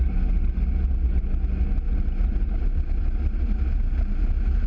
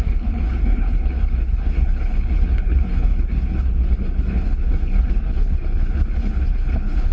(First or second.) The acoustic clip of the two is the first